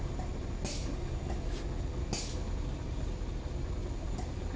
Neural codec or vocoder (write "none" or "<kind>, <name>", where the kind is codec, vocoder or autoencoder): none